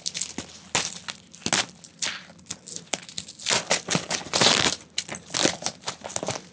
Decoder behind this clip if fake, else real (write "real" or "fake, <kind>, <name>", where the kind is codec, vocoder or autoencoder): real